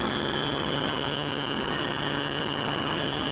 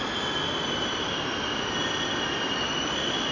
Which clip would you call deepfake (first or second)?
first